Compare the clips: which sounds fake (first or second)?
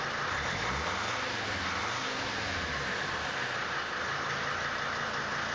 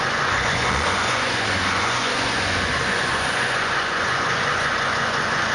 second